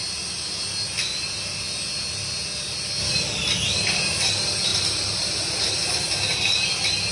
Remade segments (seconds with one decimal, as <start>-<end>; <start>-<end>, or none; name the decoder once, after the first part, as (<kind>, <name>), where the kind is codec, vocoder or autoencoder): 4.7-5.6 (vocoder, BigVGAN v2)